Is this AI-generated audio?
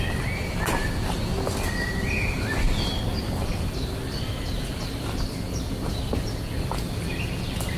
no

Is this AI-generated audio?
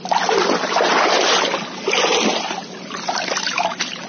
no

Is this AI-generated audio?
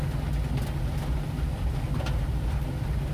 no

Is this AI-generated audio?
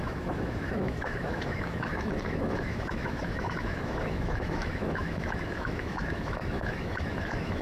yes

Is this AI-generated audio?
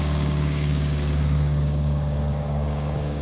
yes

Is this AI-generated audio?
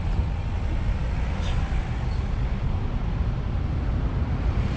no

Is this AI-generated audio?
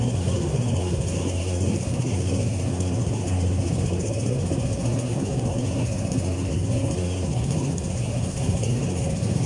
yes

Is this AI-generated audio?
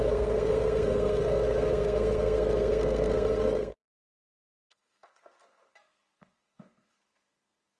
yes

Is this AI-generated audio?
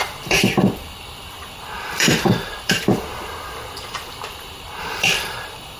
yes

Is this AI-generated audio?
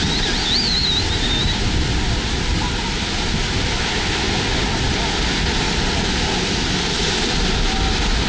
no